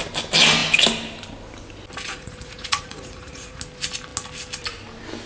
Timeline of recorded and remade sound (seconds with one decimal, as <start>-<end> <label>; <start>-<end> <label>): 0.0-2.1 recorded; 2.1-3.6 remade; 3.6-5.3 recorded